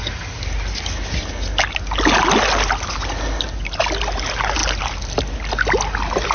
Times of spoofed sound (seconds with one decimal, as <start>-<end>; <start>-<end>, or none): none